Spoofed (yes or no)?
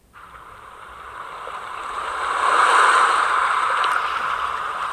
yes